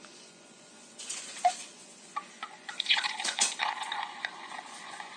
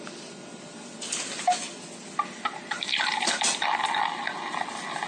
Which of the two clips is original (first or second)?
second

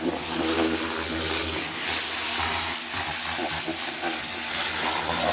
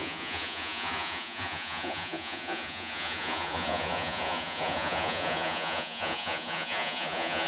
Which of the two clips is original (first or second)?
first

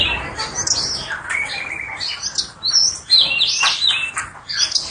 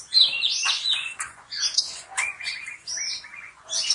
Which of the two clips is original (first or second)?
first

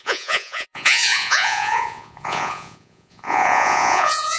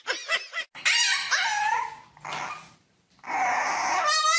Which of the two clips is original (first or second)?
second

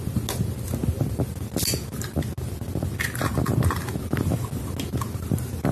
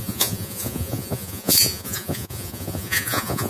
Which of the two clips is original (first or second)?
first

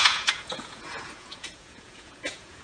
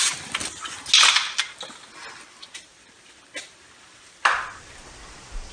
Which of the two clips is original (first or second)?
second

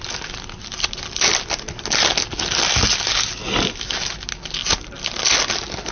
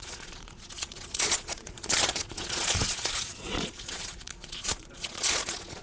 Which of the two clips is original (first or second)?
first